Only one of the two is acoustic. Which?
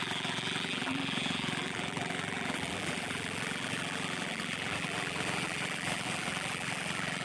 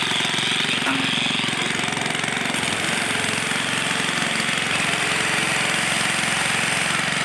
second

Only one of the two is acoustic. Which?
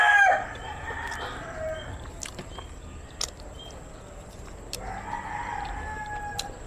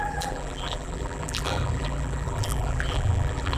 first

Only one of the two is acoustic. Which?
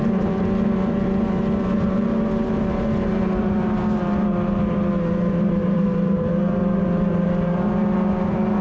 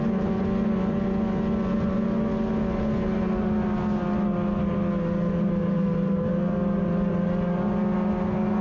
second